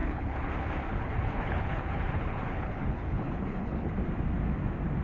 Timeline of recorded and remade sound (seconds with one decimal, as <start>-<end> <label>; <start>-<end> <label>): 0.0-0.5 remade; 0.5-0.9 recorded; 0.9-3.9 remade; 3.9-5.0 recorded